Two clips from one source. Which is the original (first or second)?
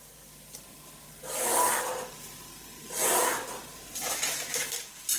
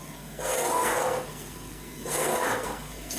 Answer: first